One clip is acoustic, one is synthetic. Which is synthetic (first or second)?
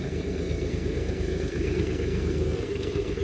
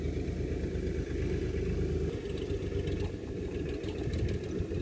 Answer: first